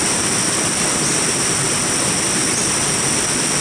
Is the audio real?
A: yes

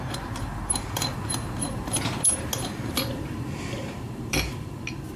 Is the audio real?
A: yes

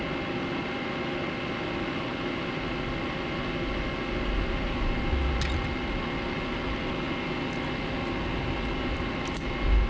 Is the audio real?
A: yes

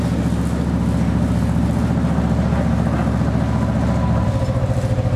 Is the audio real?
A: yes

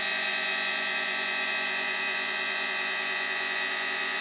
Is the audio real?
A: no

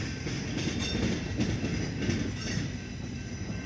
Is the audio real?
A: yes